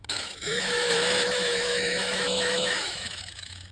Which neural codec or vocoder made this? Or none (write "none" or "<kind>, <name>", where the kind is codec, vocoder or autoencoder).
autoencoder, DAC-VAE